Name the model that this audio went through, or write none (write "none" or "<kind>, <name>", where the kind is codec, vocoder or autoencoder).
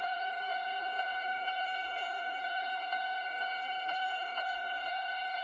codec, HILCodec